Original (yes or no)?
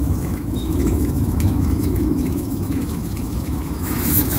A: no